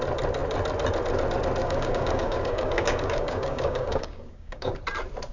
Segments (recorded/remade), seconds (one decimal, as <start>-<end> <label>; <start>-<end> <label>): 0.0-1.6 recorded; 1.6-4.8 remade; 4.8-5.3 recorded